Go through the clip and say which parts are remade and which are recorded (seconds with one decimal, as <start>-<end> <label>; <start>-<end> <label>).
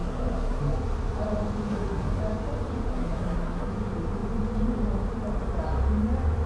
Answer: 0.0-0.6 remade; 0.6-1.7 recorded; 1.7-2.2 remade; 2.2-2.9 recorded; 2.9-3.7 remade; 3.7-6.5 recorded